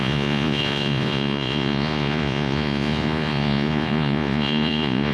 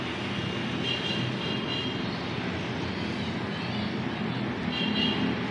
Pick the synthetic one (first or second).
first